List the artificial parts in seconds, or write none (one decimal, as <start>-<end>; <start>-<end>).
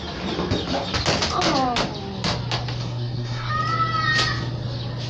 2.8-3.5